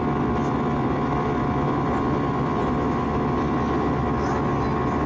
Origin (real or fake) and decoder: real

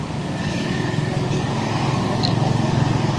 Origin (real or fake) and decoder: fake, codec, DAC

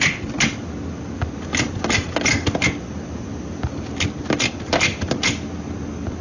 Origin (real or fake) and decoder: real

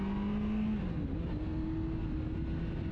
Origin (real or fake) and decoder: real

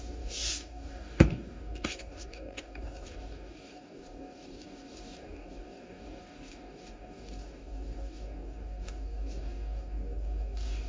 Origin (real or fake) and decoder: fake, codec, DAC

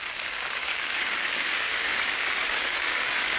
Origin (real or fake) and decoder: fake, codec, DAC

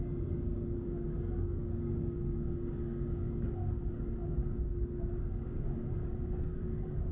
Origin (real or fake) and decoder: fake, codec, DAC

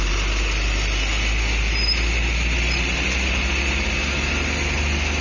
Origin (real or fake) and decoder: real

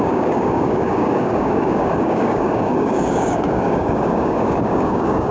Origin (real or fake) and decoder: fake, codec, DAC